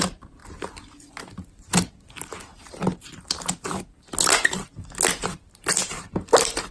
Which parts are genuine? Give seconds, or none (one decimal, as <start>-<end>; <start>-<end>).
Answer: 0.0-6.7